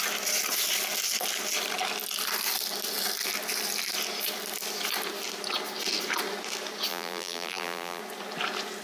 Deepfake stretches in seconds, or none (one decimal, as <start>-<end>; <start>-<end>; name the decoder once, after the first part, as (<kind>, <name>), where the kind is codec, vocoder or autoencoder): 6.9-8.0 (vocoder, BigVGAN v2)